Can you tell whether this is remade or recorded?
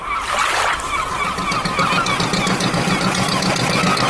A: recorded